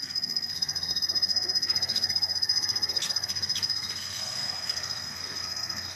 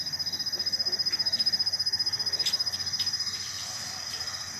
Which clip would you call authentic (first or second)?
second